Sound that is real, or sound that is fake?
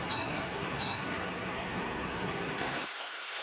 fake